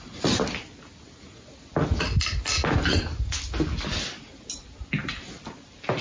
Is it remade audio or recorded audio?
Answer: recorded